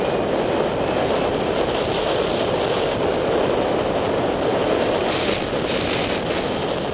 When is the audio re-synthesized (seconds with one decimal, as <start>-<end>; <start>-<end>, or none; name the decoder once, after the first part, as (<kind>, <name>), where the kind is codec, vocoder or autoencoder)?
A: none